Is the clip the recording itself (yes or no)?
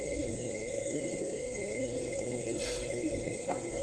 no